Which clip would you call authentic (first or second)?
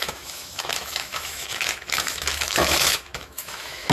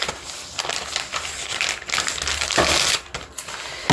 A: second